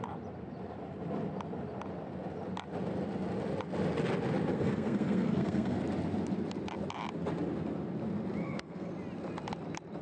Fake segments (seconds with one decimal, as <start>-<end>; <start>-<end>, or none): 4.5-5.8; 8.4-8.9